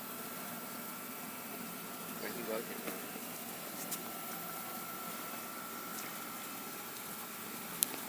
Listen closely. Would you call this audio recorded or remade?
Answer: recorded